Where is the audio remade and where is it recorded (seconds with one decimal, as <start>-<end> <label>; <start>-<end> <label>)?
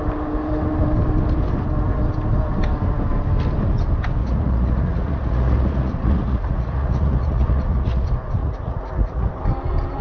0.0-4.2 recorded; 4.2-8.0 remade; 8.0-8.4 recorded; 8.4-9.3 remade; 9.3-10.0 recorded